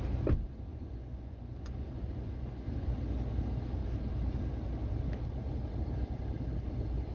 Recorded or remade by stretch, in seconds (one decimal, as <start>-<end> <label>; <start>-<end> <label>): 0.0-0.7 recorded; 0.7-2.9 remade; 2.9-7.1 recorded